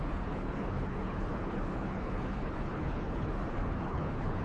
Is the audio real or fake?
fake